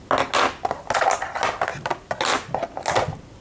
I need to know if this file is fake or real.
real